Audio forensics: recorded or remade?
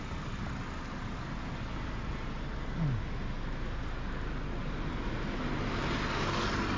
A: recorded